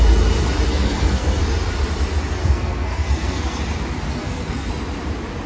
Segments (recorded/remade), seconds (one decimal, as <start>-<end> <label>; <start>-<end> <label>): 0.0-0.7 recorded; 0.7-1.4 remade; 1.4-2.4 recorded; 2.4-3.6 remade; 3.6-4.1 recorded; 4.1-4.7 remade; 4.7-5.5 recorded